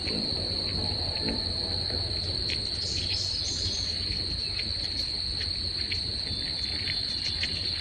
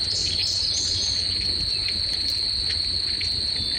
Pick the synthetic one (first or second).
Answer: first